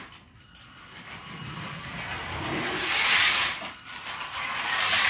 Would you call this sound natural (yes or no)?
yes